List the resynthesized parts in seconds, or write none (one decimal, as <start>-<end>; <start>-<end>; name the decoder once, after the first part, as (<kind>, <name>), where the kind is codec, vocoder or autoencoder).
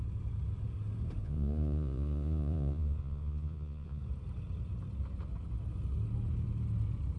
1.2-4.0 (vocoder, Vocos)